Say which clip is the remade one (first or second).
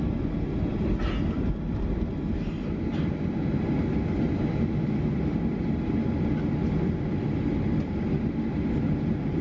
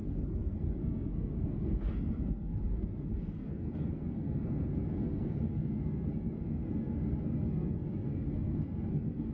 second